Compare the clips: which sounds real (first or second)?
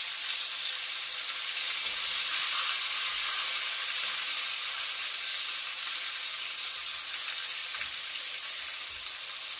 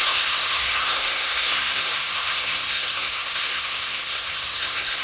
first